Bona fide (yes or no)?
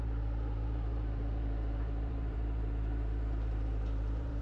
no